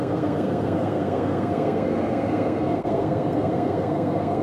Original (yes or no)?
no